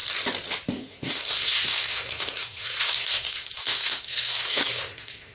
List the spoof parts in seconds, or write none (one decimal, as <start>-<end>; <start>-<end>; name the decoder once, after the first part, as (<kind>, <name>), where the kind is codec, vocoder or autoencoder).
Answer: 0.7-5.3 (codec, SNAC)